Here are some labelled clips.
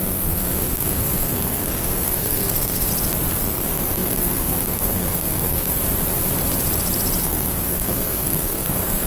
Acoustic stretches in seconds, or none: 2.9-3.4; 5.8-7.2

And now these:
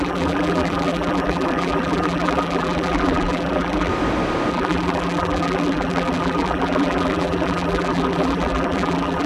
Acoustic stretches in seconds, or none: 3.9-4.5

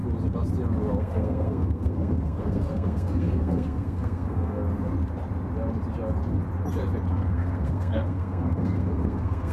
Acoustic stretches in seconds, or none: 0.0-1.0; 4.6-7.1

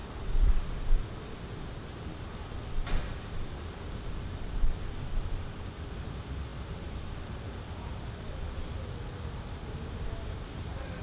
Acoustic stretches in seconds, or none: 0.0-11.0

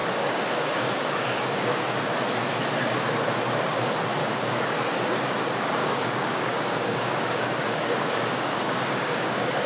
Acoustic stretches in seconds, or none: 1.8-4.2; 4.7-5.8

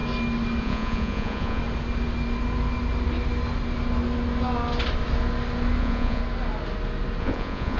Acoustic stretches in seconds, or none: 0.0-0.6; 1.6-5.8; 6.2-7.2

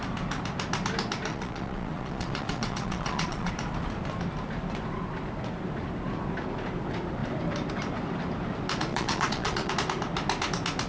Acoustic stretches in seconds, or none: 0.0-1.3; 3.5-8.9; 9.7-10.9

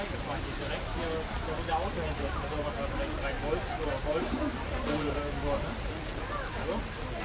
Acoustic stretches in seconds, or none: 0.0-3.8; 5.2-7.2